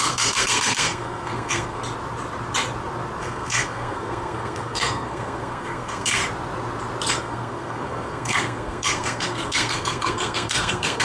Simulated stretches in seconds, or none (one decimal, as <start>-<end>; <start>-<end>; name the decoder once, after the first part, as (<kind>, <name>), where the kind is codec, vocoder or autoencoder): 0.0-1.8 (codec, SNAC); 3.2-6.2; 7.1-11.0